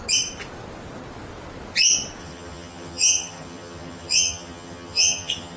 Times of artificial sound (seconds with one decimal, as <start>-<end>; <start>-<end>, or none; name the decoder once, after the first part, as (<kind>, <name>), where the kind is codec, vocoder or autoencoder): 2.2-5.6 (vocoder, HiFi-GAN)